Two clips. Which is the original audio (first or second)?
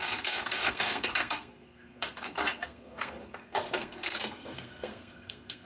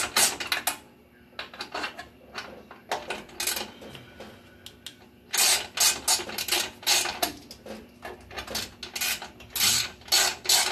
second